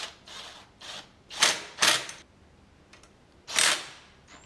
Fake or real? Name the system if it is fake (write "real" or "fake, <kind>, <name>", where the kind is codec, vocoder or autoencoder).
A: real